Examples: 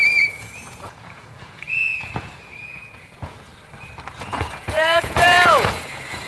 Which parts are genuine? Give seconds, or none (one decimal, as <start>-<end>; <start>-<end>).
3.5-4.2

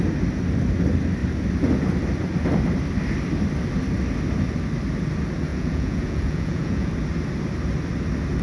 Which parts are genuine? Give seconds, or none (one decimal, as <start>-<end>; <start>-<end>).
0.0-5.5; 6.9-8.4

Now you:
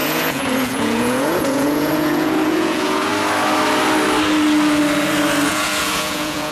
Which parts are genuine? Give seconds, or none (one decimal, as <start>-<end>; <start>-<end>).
3.1-5.5